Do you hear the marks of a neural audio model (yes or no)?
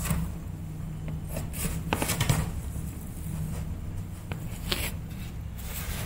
no